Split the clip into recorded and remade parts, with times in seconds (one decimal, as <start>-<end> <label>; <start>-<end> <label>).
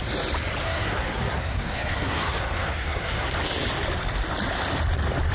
0.0-0.6 recorded; 0.6-3.3 remade; 3.3-5.3 recorded